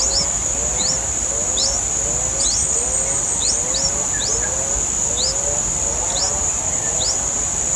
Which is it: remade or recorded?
recorded